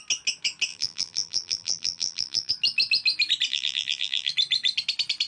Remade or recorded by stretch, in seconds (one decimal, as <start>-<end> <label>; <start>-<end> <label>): 0.0-0.7 recorded; 0.7-2.5 remade; 2.5-3.5 recorded; 3.5-4.3 remade; 4.3-5.3 recorded